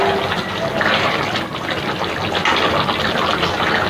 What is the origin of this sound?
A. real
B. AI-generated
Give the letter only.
A